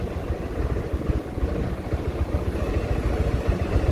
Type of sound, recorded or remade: recorded